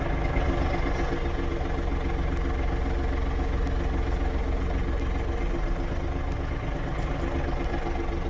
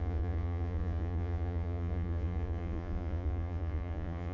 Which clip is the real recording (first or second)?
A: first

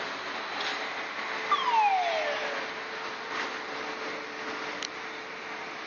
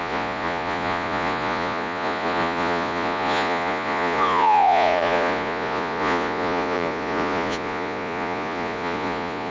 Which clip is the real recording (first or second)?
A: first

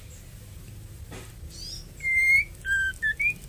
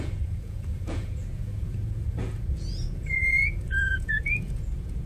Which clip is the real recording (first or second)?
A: first